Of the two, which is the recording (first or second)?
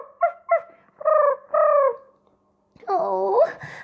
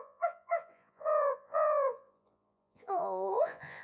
first